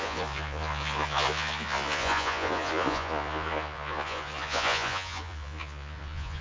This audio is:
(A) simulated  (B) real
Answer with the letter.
A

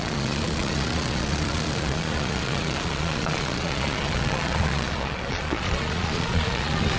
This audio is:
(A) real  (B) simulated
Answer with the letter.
B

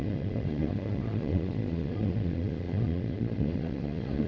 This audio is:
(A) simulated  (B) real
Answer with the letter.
A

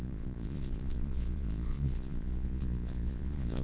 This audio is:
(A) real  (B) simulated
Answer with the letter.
B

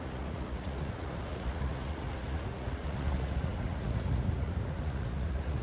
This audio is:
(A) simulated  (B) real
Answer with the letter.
A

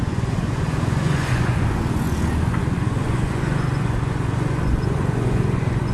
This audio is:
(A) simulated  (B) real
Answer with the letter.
A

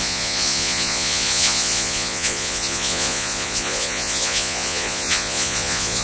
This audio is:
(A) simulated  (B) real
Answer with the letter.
A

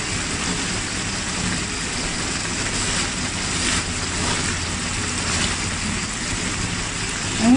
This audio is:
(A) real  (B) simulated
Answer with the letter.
A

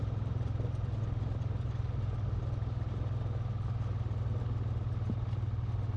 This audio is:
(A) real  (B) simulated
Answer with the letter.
A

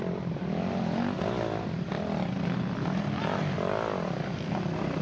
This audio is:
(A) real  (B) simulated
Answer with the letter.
A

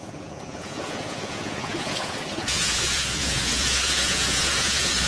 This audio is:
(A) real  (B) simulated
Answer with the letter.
B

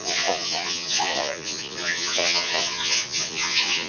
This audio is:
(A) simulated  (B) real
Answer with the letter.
A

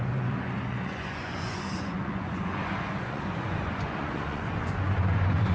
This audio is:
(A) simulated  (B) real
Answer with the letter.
A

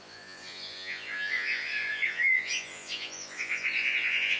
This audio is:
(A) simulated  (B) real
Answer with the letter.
A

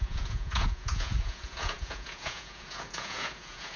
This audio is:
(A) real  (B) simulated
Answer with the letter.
B